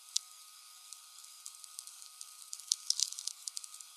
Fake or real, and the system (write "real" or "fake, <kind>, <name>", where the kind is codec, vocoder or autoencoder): fake, codec, SNAC